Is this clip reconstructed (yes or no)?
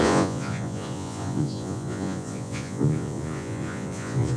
yes